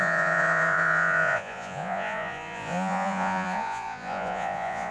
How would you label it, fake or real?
fake